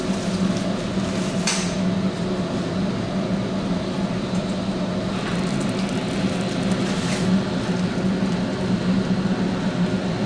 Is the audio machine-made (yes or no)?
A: no